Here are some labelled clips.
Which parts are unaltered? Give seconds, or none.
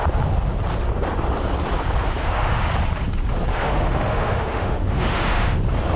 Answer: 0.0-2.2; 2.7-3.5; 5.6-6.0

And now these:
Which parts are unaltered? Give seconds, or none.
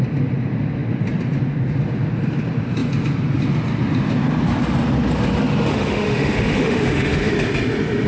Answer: 0.0-5.7; 7.3-8.1